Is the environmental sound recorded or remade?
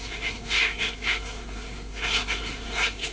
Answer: remade